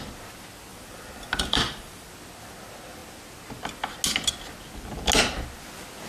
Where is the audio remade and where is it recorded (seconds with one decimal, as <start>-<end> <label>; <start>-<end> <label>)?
0.0-0.7 recorded; 0.7-2.1 remade; 2.1-6.1 recorded